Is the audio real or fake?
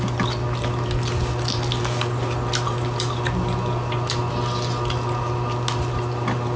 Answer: real